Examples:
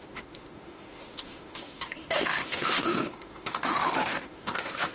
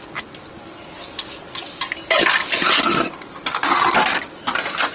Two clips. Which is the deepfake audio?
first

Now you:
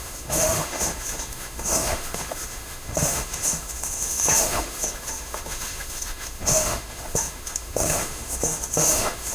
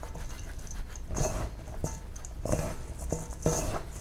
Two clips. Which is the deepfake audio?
first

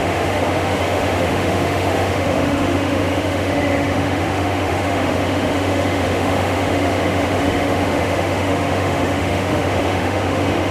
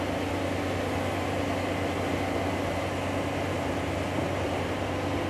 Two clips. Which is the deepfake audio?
first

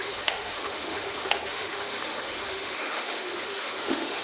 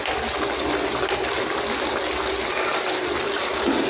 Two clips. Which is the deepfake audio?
first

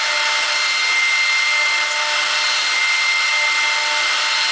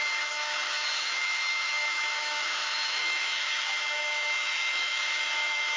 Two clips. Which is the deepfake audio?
second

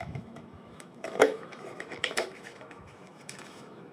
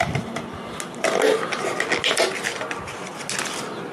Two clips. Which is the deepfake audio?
first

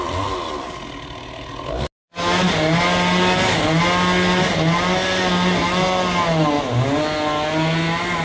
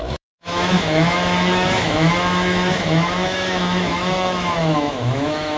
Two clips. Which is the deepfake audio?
second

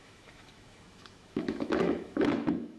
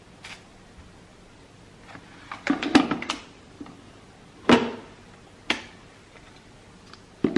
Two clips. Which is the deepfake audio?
first